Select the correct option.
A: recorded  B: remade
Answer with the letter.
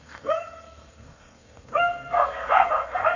B